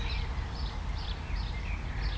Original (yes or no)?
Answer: yes